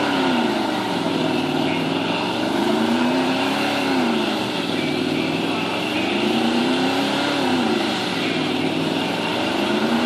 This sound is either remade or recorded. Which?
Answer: remade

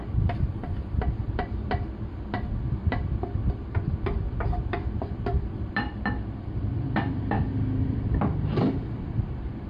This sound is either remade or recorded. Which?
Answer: remade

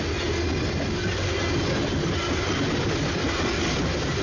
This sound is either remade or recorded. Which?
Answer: recorded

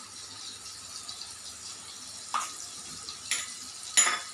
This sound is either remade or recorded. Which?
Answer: recorded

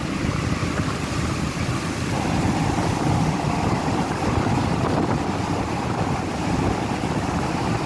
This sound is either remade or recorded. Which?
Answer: remade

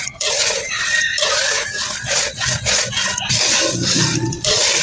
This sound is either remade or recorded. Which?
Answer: remade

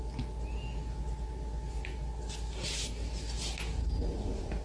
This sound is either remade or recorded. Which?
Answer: recorded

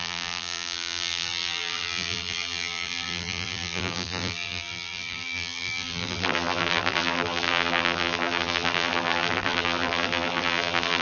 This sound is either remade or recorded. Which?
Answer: remade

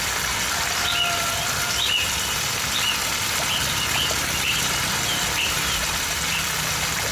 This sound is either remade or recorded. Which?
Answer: remade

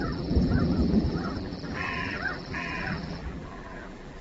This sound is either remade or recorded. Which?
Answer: remade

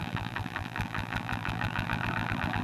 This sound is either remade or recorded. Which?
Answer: remade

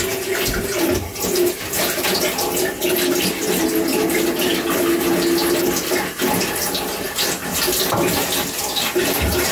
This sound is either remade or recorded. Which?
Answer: recorded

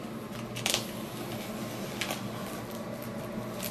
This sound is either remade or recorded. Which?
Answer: recorded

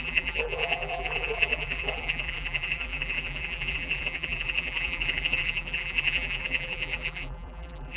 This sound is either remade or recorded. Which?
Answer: remade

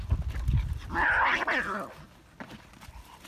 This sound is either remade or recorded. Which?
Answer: recorded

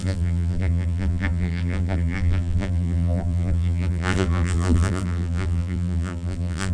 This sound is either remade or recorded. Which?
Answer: remade